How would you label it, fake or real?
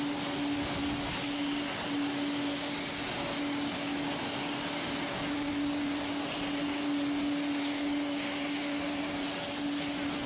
real